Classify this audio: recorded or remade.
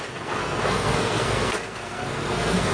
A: remade